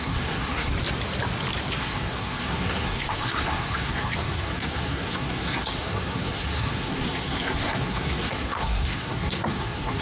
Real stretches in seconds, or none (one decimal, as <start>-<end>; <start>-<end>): 0.7-1.8